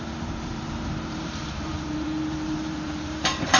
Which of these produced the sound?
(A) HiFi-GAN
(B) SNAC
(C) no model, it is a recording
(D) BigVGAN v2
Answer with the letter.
D